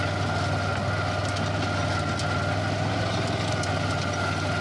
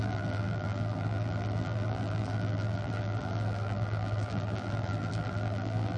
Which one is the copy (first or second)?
second